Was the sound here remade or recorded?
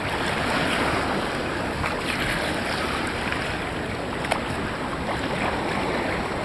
recorded